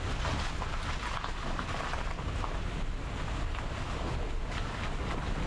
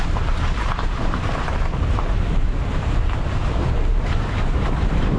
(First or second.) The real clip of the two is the first